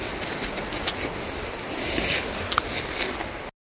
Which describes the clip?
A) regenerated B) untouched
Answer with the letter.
B